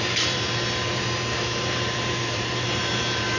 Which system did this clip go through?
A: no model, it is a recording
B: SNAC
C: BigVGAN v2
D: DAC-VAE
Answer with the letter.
C